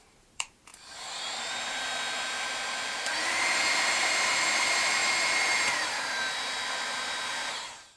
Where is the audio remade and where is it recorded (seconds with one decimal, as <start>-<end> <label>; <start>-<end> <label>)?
0.0-8.0 remade